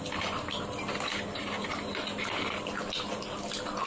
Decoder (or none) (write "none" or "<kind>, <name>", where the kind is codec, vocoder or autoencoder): none